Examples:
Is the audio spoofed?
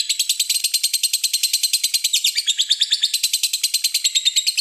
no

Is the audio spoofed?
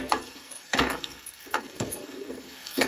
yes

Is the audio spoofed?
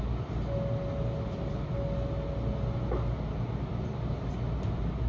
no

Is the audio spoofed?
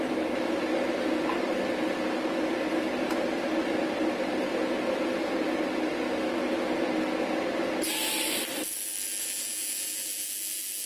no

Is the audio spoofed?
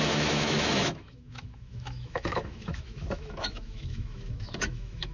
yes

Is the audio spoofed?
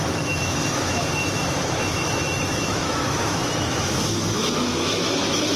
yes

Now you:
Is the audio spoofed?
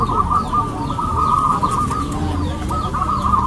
no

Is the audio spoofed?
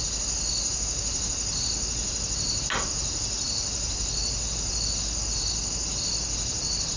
no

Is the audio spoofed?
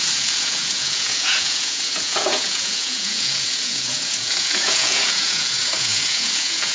yes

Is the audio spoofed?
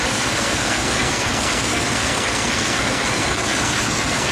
yes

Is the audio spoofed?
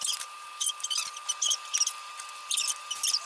no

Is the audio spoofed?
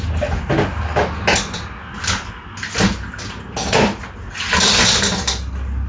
no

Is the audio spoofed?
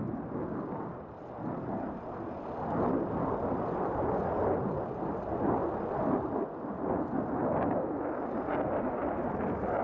no